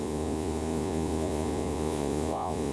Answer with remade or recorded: remade